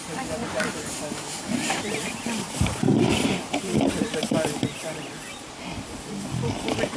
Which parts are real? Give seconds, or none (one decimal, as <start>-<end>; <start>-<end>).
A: 0.0-0.4; 4.1-7.0